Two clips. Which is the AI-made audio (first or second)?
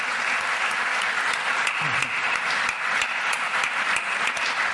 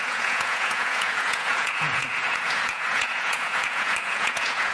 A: second